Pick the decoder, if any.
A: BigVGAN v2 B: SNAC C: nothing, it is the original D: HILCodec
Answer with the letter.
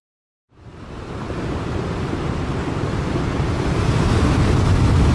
C